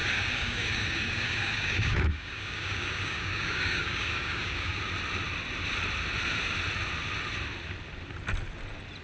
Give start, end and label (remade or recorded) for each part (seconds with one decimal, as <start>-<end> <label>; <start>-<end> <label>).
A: 0.0-4.8 remade; 4.8-9.0 recorded